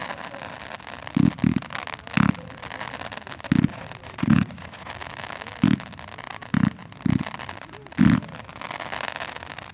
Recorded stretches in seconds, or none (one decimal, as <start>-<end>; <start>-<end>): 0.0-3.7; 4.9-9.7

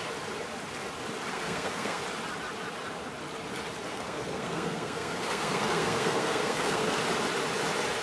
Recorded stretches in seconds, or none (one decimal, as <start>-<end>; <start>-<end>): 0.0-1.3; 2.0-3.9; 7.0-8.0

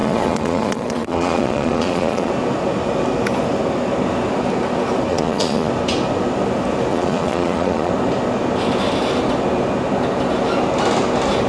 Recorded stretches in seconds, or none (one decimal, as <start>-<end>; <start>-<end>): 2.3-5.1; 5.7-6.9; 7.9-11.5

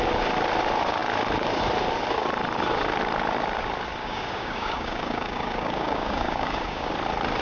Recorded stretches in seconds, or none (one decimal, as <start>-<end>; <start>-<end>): 0.0-4.0; 6.9-7.4

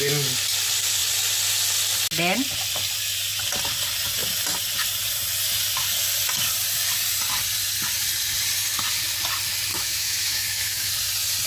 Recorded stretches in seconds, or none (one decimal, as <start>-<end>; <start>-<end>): 0.0-9.7; 10.9-11.5

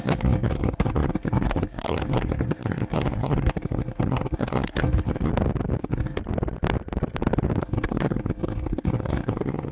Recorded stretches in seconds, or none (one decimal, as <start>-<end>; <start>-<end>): 5.3-5.8; 6.2-7.6

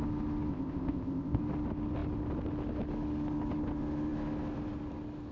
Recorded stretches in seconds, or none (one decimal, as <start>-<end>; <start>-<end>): 0.0-0.5; 1.4-5.3

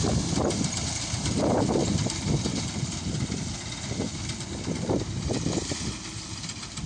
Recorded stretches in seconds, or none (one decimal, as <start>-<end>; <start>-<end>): 0.0-6.9